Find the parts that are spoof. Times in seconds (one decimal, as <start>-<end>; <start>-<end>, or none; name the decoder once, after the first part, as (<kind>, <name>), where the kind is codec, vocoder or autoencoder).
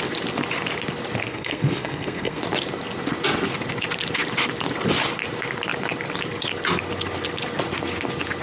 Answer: 1.2-2.4 (codec, SNAC)